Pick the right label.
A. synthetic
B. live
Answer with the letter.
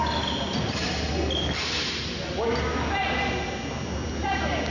B